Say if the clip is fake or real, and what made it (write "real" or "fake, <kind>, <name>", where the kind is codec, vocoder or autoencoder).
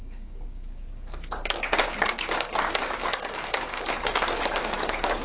fake, codec, DAC